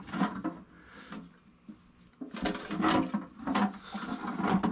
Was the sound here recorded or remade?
recorded